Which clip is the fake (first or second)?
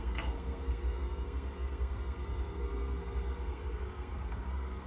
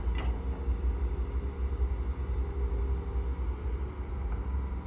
first